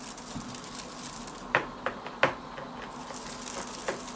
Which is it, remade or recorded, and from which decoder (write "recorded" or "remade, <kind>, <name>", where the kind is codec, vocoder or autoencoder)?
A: recorded